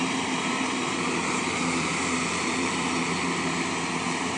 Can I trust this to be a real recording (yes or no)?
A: no